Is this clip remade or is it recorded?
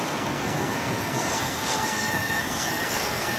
remade